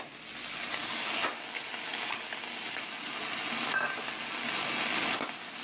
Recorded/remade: recorded